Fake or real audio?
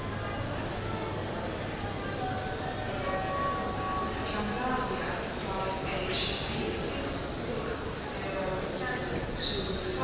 real